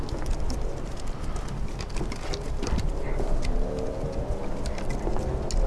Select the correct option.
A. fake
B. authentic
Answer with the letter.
B